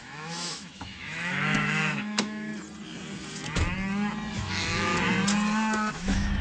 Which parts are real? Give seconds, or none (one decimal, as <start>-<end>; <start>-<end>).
2.5-4.3; 4.9-5.9